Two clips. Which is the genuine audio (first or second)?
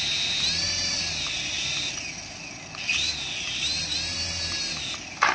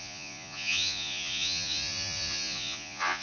first